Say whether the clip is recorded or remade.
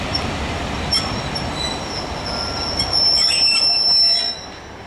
recorded